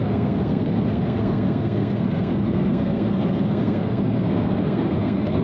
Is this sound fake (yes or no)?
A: yes